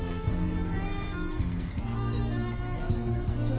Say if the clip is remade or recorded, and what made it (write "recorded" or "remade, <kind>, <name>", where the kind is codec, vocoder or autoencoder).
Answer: remade, codec, SNAC